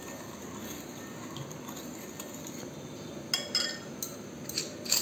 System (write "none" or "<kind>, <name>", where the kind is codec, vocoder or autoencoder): none